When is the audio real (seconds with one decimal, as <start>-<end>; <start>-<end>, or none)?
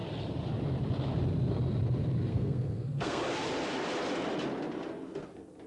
0.0-2.3; 3.2-5.7